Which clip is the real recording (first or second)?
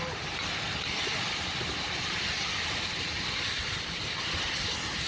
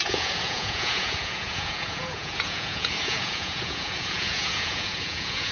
first